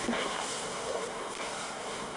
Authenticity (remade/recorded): remade